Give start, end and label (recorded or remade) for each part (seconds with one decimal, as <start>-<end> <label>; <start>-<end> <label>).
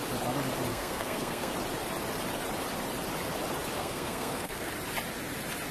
0.0-0.7 recorded; 0.7-1.5 remade; 1.5-3.8 recorded; 3.8-4.7 remade; 4.7-5.7 recorded